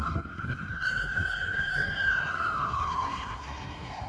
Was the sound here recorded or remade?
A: remade